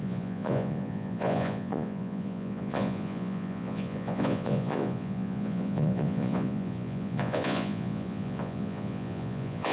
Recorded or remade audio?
remade